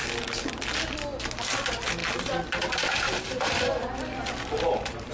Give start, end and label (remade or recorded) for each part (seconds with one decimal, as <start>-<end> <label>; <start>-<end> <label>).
0.0-2.0 recorded; 2.0-5.1 remade